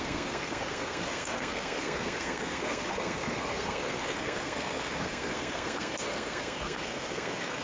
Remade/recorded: remade